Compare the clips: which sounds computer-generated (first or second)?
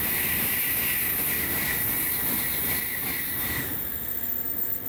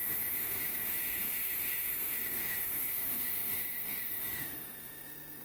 second